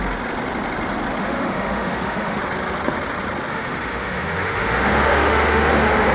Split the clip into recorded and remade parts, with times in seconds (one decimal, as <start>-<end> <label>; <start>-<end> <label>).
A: 0.0-1.2 recorded; 1.2-2.4 remade; 2.4-3.5 recorded; 3.5-6.1 remade